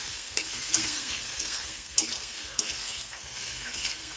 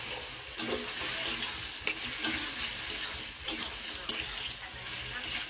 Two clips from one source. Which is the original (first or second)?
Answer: second